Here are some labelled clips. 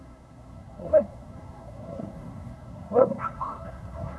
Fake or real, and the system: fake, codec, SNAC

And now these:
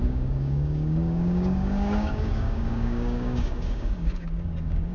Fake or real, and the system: fake, codec, DAC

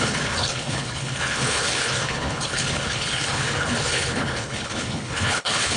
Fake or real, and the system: fake, codec, HILCodec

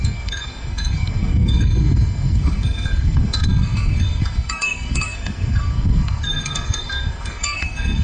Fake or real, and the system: fake, codec, SNAC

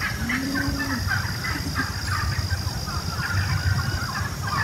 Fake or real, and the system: real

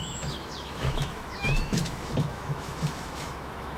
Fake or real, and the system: fake, autoencoder, DAC-VAE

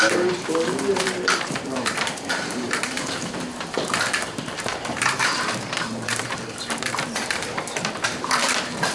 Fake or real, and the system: fake, vocoder, BigVGAN v2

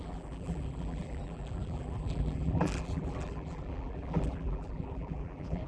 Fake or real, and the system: fake, vocoder, BigVGAN v2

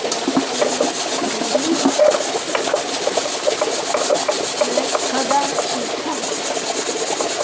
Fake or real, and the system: real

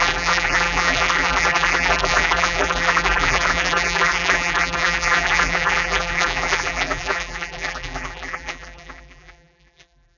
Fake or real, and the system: fake, vocoder, BigVGAN v2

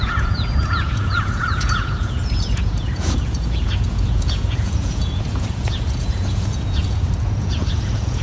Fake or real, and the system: fake, vocoder, Vocos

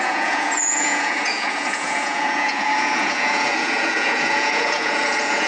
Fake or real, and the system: fake, vocoder, Vocos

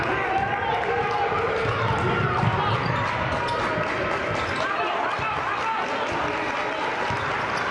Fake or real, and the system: real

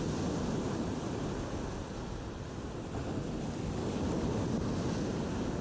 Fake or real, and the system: real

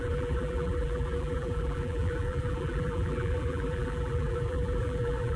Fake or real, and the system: fake, vocoder, BigVGAN v2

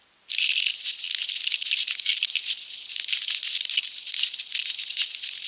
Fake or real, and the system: real